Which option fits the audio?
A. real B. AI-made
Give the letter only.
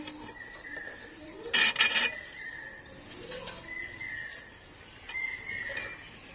A